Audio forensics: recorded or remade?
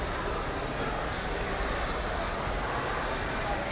recorded